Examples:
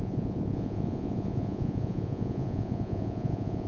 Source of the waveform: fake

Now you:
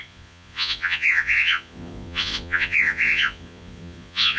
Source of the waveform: fake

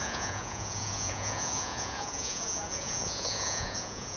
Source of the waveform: fake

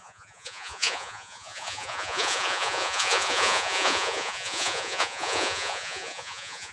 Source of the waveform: fake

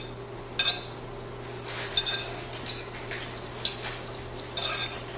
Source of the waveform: real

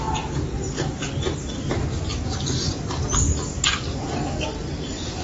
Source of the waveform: real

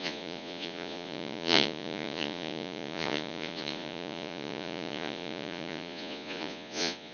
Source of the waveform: fake